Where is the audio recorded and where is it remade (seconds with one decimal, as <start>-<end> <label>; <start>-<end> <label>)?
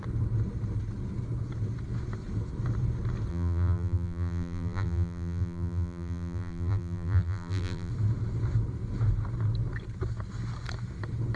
0.0-3.3 recorded; 3.3-7.9 remade; 7.9-11.4 recorded